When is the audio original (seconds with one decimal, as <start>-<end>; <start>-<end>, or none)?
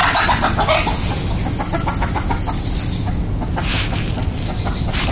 0.0-5.1